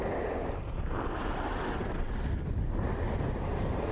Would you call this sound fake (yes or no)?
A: no